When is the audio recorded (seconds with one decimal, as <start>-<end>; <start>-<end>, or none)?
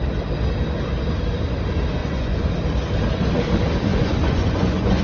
0.0-2.0; 2.5-3.9